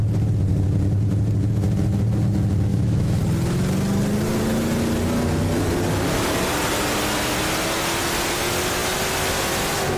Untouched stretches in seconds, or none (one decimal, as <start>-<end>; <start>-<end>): 0.0-2.7; 3.2-10.0